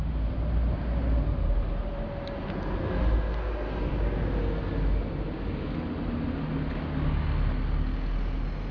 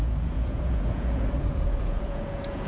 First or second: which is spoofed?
second